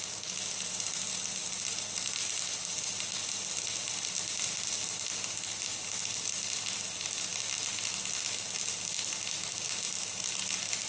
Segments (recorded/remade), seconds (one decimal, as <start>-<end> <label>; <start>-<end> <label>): 0.0-10.9 recorded